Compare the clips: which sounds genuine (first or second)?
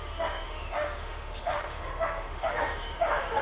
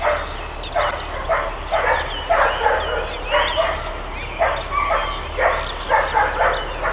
second